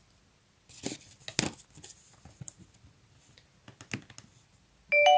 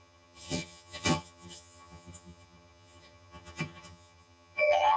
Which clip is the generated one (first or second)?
second